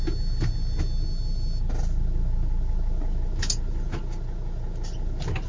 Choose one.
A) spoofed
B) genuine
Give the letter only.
B